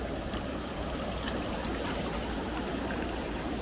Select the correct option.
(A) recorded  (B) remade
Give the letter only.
B